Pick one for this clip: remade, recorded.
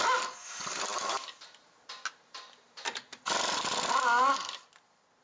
recorded